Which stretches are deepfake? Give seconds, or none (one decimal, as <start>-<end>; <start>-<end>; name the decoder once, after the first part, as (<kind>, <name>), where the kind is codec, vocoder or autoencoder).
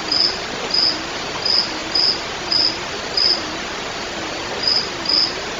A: none